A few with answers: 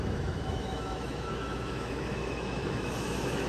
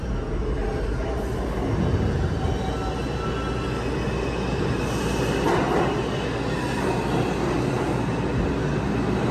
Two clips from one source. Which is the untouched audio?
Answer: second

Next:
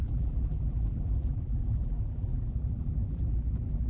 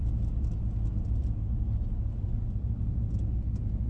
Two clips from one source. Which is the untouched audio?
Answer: second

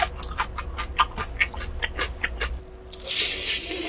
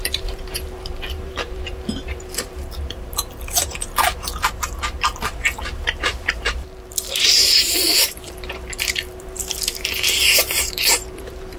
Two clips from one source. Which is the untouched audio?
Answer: first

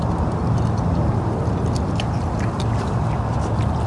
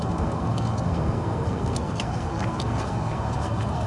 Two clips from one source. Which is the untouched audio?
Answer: first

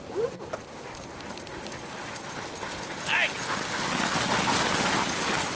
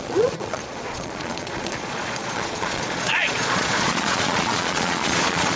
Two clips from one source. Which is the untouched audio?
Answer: first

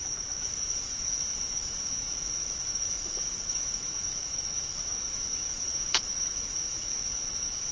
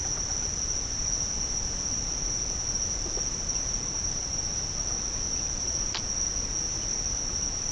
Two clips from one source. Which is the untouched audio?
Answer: second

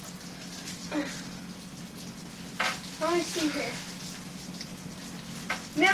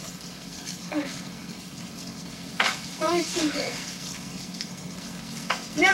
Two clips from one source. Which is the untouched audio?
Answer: first